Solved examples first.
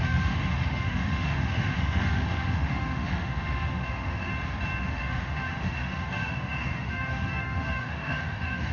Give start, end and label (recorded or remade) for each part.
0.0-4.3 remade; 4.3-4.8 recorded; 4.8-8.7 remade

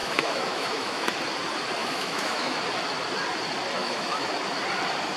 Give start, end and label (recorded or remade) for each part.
0.0-1.1 remade; 1.1-1.8 recorded; 1.8-2.6 remade; 2.6-3.8 recorded; 3.8-4.3 remade; 4.3-5.2 recorded

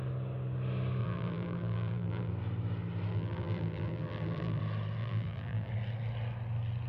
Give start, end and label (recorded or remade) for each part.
0.0-1.0 recorded; 1.0-2.3 remade; 2.3-3.1 recorded; 3.1-4.6 remade; 4.6-5.0 recorded; 5.0-5.7 remade; 5.7-6.9 recorded

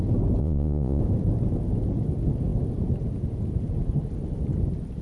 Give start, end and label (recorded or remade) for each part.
0.0-0.4 recorded; 0.4-1.0 remade; 1.0-5.0 recorded

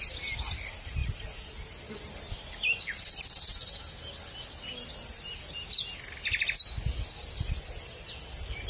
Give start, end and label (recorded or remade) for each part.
0.0-8.7 recorded

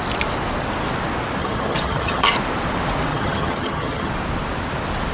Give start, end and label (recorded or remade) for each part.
0.0-1.4 recorded; 1.4-2.3 remade; 2.3-3.1 recorded; 3.1-4.1 remade; 4.1-5.1 recorded

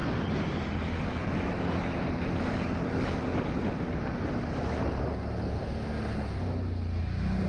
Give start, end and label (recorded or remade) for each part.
0.0-7.5 recorded